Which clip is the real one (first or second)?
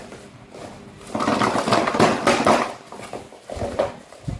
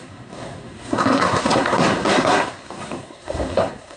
first